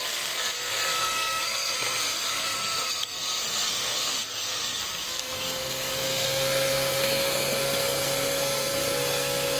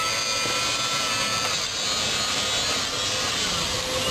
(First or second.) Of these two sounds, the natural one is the second